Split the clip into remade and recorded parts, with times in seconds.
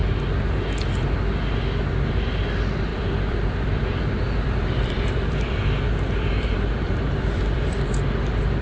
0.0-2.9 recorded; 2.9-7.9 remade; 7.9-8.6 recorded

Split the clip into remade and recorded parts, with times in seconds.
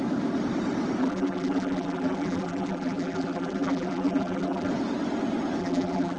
0.0-1.0 recorded; 1.0-4.7 remade; 4.7-5.6 recorded; 5.6-6.2 remade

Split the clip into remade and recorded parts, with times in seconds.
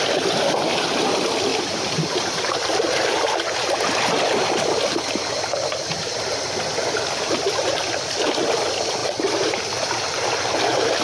0.0-1.5 recorded; 1.5-4.2 remade; 4.2-9.0 recorded; 9.0-9.6 remade; 9.6-11.0 recorded